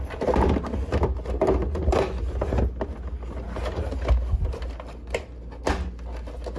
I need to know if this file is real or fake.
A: real